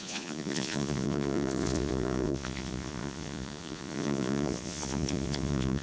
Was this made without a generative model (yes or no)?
no